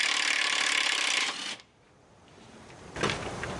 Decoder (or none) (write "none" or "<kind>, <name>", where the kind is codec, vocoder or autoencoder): none